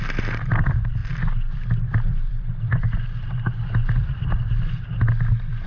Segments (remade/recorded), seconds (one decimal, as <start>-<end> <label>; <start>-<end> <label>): 0.0-1.0 recorded; 1.0-4.2 remade; 4.2-5.7 recorded